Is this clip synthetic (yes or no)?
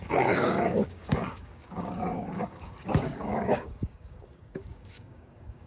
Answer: yes